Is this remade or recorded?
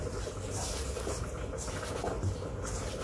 recorded